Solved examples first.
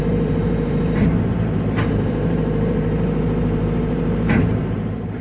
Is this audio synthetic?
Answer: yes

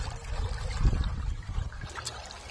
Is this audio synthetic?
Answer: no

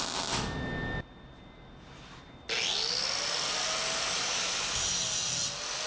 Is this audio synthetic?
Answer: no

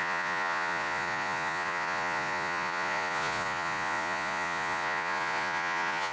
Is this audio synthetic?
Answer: yes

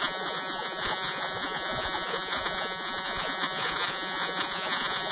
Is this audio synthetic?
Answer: yes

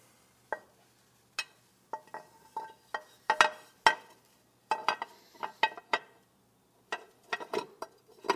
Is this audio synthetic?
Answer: no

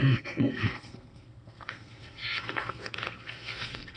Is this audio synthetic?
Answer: yes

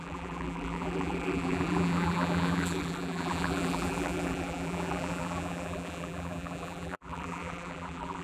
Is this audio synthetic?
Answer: yes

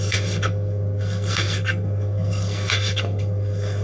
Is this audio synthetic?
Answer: yes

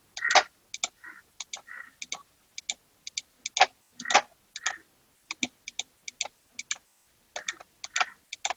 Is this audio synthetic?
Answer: no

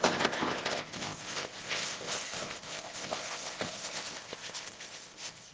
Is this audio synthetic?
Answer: yes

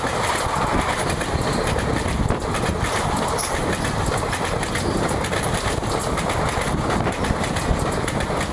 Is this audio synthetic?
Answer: no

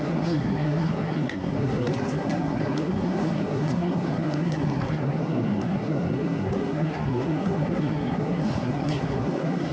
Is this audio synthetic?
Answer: yes